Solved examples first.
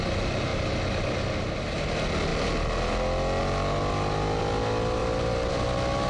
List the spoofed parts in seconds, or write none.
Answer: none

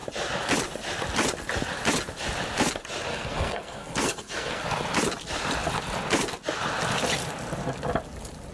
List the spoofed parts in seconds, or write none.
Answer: 3.1-4.6 (codec, SNAC)

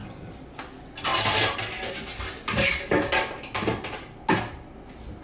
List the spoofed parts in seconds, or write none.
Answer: 2.7-3.3 (codec, DAC)